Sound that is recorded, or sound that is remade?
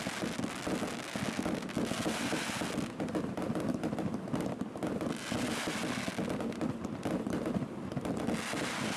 recorded